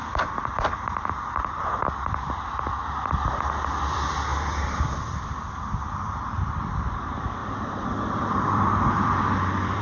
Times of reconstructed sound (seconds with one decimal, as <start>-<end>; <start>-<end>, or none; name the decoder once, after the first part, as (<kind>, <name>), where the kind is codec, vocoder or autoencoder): 0.0-1.7 (vocoder, BigVGAN v2); 7.4-9.8